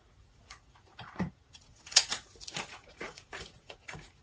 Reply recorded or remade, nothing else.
remade